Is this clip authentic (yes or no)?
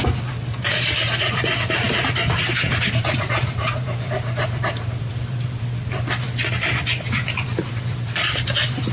no